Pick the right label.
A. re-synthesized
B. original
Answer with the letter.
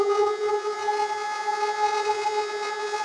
A